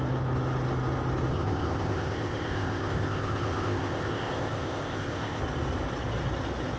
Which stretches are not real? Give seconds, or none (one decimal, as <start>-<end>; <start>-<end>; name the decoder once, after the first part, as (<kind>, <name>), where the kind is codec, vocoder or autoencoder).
1.3-5.4 (codec, ZipCodec)